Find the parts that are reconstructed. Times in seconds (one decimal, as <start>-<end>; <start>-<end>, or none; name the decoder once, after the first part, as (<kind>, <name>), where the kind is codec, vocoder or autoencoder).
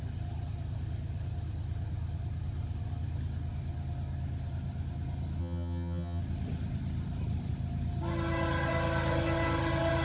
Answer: 5.4-6.2 (vocoder, HiFi-GAN)